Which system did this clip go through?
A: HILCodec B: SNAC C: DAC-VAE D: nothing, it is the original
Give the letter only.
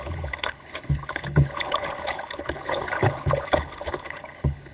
A